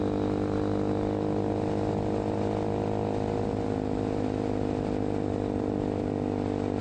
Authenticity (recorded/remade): recorded